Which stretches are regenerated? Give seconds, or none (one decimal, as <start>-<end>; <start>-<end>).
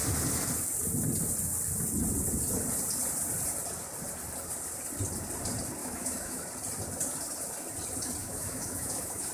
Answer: 5.8-6.4; 8.2-9.3